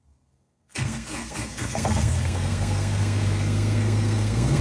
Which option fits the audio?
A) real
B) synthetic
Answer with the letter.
B